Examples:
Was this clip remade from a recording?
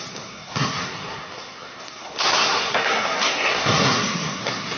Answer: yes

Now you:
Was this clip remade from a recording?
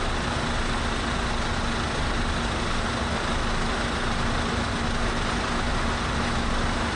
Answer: no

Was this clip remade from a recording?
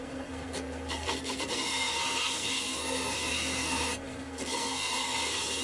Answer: yes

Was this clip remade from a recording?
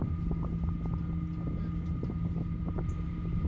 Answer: no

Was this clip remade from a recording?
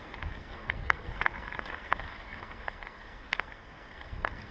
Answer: yes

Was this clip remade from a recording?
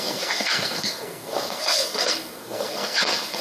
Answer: yes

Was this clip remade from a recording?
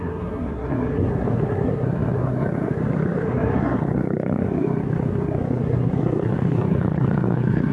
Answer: yes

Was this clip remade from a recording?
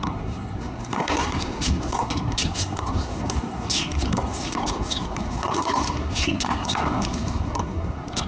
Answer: yes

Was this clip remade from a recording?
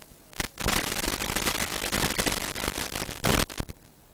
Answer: no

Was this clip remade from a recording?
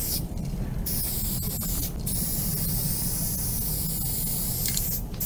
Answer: no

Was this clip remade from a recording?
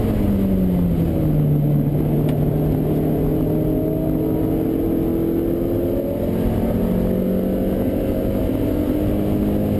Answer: no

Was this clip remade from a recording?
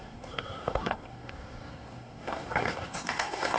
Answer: yes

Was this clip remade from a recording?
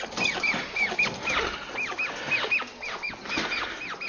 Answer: no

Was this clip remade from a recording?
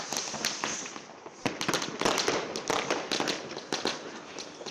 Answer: no